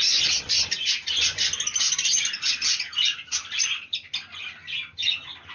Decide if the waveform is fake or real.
real